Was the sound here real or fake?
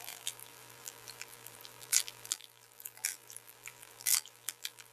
fake